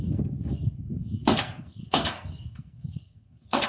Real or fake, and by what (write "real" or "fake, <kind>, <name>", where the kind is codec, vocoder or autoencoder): fake, codec, SNAC